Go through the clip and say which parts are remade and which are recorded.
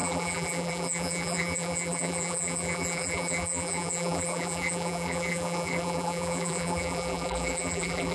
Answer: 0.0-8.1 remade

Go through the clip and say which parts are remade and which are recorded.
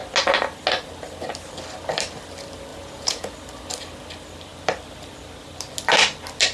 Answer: 0.0-2.7 recorded; 2.7-3.3 remade; 3.3-6.5 recorded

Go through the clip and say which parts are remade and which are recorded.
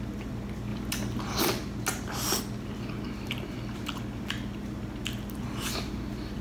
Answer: 0.0-6.4 recorded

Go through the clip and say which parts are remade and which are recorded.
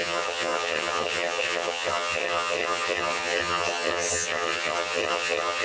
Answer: 0.0-5.6 remade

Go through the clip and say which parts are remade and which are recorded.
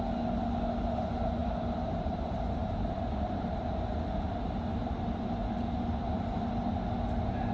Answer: 0.0-1.4 recorded; 1.4-3.7 remade; 3.7-7.5 recorded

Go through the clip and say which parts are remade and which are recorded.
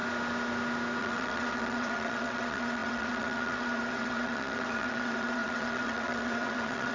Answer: 0.0-1.0 recorded; 1.0-6.9 remade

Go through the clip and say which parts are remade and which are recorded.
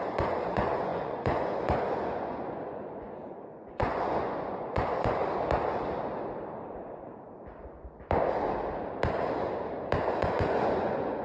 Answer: 0.0-5.2 remade; 5.2-10.1 recorded; 10.1-11.2 remade